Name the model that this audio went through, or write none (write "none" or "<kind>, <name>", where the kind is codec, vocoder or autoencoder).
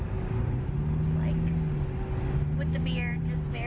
none